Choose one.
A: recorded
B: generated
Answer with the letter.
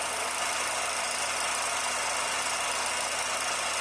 A